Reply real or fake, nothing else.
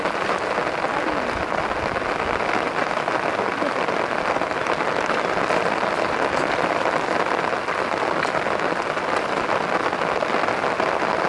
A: real